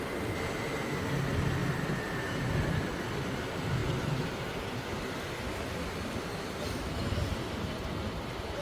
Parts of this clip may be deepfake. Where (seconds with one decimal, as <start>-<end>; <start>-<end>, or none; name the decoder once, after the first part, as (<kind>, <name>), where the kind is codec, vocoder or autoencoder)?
1.6-2.2 (vocoder, BigVGAN v2)